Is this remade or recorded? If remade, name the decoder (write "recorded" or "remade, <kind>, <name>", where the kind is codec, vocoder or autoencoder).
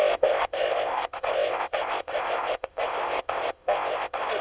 remade, codec, ZipCodec